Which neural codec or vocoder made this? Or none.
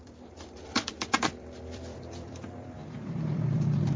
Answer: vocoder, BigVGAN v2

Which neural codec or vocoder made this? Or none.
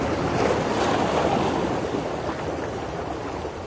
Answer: none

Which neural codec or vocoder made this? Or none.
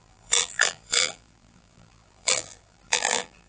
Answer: vocoder, BigVGAN v2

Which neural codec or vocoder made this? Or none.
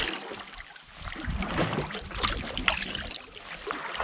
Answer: none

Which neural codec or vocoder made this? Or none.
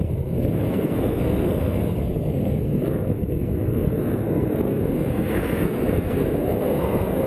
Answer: codec, SNAC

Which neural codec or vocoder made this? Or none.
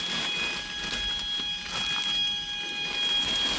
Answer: none